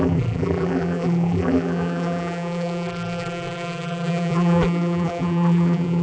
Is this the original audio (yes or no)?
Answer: no